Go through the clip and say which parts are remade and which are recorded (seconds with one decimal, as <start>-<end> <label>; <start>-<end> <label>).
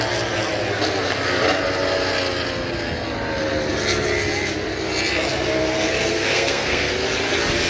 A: 0.0-6.1 recorded; 6.1-6.9 remade; 6.9-7.7 recorded